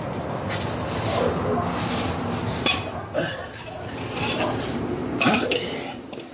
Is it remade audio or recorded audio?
recorded